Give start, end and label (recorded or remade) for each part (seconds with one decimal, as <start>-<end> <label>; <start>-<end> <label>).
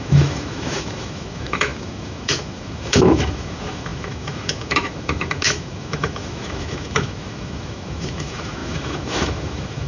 0.0-9.9 remade